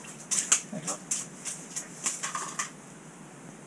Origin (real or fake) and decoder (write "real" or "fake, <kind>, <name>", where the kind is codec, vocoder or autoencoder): real